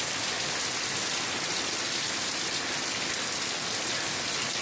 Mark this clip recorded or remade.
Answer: recorded